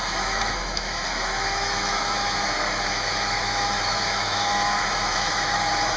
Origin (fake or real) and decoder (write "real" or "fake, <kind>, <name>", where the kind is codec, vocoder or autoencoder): fake, autoencoder, DAC-VAE